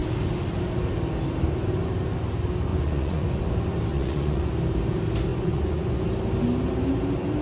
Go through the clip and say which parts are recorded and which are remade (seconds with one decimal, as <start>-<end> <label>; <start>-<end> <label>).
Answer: 0.0-2.7 recorded; 2.7-3.4 remade; 3.4-3.9 recorded; 3.9-4.5 remade; 4.5-5.3 recorded; 5.3-6.0 remade; 6.0-7.4 recorded